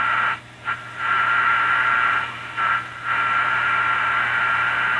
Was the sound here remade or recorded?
recorded